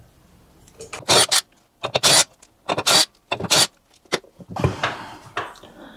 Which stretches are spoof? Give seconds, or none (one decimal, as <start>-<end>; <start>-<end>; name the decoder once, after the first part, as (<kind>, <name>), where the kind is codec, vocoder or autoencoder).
none